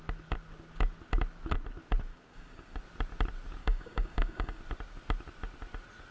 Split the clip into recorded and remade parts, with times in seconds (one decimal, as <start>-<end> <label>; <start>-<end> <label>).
0.0-2.1 recorded; 2.1-2.8 remade; 2.8-3.6 recorded; 3.6-4.6 remade; 4.6-6.1 recorded